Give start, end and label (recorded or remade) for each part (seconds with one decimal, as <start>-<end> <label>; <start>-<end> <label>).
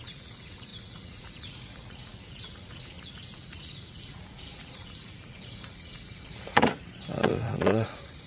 0.0-8.3 remade